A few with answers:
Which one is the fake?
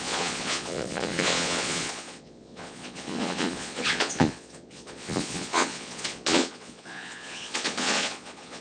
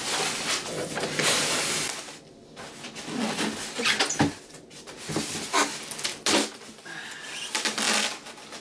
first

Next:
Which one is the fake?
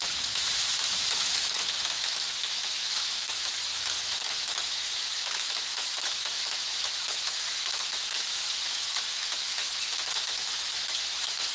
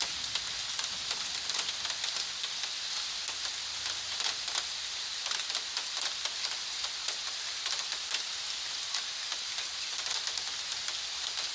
first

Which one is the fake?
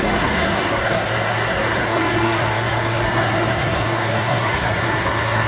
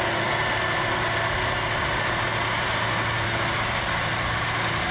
first